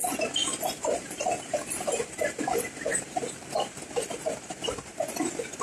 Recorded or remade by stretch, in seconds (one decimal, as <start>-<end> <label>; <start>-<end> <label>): 0.0-0.4 recorded; 0.4-2.5 remade; 2.5-2.9 recorded; 2.9-3.5 remade; 3.5-5.6 recorded